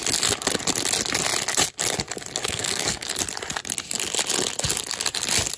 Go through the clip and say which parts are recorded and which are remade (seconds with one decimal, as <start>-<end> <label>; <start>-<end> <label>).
0.0-2.4 recorded; 2.4-3.1 remade; 3.1-5.6 recorded